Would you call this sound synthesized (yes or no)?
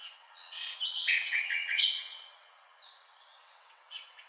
yes